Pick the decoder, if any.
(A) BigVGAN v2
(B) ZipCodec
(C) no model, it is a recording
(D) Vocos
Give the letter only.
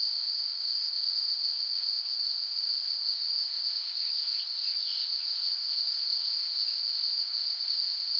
B